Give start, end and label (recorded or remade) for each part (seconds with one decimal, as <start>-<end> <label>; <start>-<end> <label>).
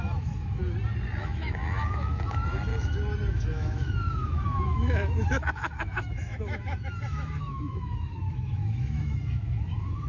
0.0-0.6 remade; 0.6-1.2 recorded; 1.2-2.7 remade; 2.7-3.3 recorded; 3.3-10.1 remade